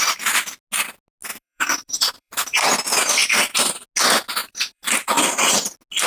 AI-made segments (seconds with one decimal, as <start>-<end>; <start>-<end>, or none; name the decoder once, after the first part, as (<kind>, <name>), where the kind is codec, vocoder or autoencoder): 1.3-2.6 (vocoder, BigVGAN v2); 4.4-5.5